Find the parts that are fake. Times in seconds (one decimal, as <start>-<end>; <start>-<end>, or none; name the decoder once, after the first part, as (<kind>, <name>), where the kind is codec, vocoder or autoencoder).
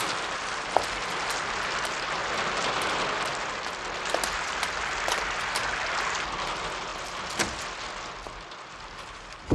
none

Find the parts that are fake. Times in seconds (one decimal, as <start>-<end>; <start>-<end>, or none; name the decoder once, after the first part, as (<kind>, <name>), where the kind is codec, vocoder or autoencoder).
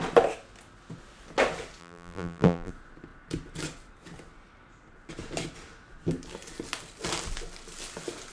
1.8-2.7 (vocoder, BigVGAN v2)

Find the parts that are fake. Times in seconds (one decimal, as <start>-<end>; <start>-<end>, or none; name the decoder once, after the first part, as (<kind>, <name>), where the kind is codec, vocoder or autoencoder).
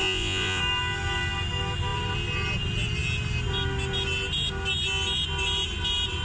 0.0-0.6 (vocoder, Vocos)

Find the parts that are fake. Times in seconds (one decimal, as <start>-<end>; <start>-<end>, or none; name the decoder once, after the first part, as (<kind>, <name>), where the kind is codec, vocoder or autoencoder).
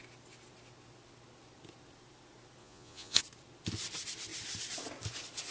2.6-3.2 (vocoder, Vocos)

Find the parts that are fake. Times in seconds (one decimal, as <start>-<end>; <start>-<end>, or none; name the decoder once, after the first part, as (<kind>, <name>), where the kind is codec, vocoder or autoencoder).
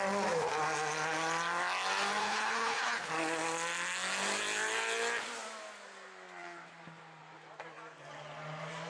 2.2-3.1 (codec, HILCodec)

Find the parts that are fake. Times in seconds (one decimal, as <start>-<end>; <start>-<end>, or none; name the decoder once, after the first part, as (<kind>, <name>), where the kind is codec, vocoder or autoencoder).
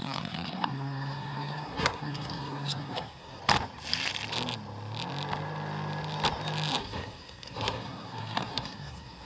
0.0-3.4 (codec, SNAC); 6.8-9.3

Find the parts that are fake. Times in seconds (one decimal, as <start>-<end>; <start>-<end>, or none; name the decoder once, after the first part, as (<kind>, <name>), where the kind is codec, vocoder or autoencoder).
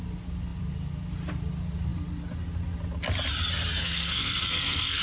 3.8-5.0 (codec, SNAC)